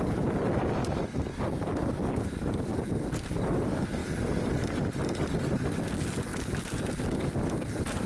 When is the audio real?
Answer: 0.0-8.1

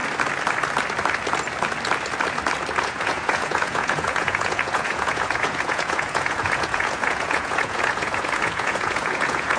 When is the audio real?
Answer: 0.0-2.8

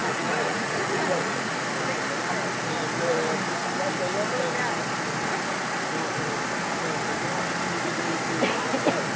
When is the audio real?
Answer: 1.5-9.2

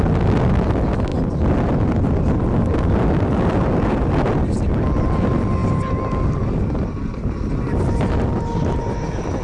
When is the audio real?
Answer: 0.0-9.4

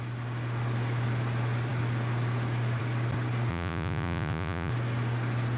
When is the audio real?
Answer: 0.0-3.5; 4.7-5.6

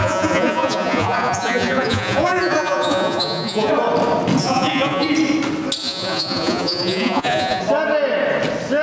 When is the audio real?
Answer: 3.7-4.4; 5.1-5.8; 7.6-8.8